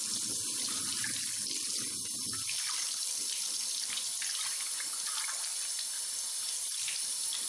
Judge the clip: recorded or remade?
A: recorded